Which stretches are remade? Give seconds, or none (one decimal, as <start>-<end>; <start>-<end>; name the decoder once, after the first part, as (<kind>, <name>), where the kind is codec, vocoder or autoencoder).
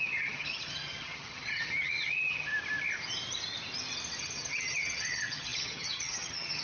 0.0-2.5 (vocoder, HiFi-GAN); 4.2-6.6